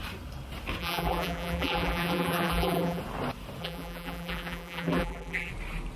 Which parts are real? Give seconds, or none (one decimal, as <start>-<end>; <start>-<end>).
0.0-0.8; 3.0-3.6; 5.5-6.0